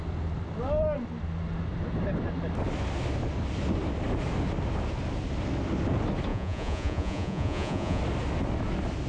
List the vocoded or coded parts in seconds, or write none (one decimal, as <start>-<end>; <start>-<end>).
6.3-8.0